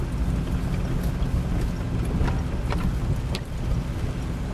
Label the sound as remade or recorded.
recorded